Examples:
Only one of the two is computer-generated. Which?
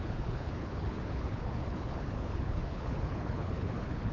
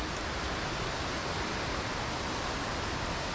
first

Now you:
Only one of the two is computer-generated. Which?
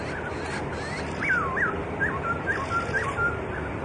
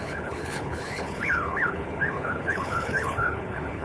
second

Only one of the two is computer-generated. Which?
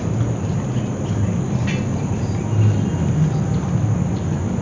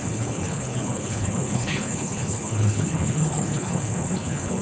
second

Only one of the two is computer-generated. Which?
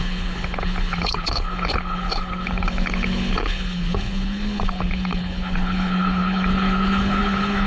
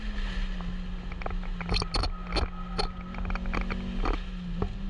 first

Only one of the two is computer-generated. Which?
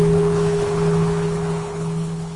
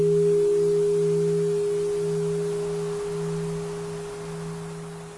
first